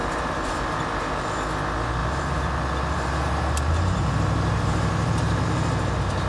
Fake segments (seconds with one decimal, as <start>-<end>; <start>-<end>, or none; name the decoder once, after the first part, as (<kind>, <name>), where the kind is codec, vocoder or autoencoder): 0.0-0.8 (vocoder, BigVGAN v2); 2.0-5.4